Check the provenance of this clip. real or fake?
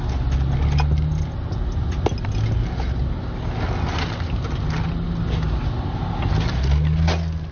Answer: real